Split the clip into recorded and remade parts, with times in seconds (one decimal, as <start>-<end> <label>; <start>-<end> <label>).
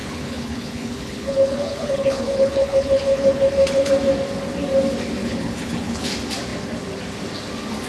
0.0-3.9 remade; 3.9-5.2 recorded; 5.2-6.1 remade; 6.1-7.9 recorded